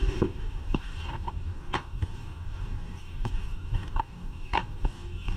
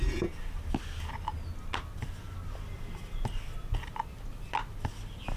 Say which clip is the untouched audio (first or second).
second